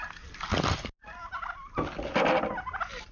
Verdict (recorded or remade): recorded